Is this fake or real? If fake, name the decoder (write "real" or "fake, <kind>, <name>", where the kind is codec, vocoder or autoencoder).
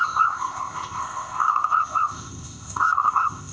fake, codec, ZipCodec